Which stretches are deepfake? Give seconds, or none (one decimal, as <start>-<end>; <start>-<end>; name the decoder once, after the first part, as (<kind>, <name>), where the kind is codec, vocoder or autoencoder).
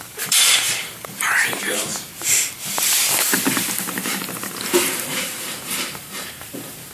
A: 0.0-1.9 (vocoder, BigVGAN v2); 4.8-6.9